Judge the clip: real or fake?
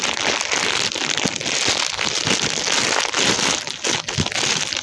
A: real